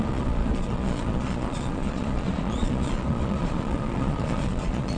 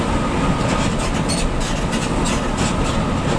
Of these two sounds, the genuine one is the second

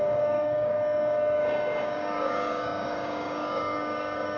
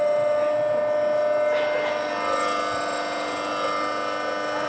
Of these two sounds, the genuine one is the second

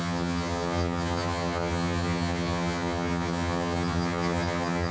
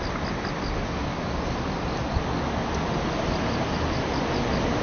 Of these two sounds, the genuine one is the second